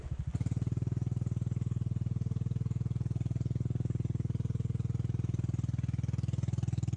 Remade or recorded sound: recorded